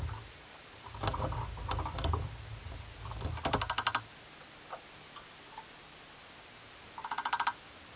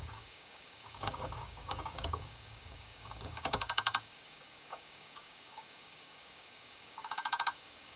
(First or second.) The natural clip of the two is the first